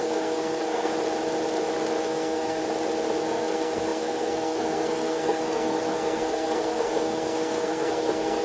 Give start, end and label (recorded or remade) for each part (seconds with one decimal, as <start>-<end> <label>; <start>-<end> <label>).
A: 0.0-0.9 remade; 0.9-2.0 recorded; 2.0-2.6 remade; 2.6-3.3 recorded; 3.3-8.4 remade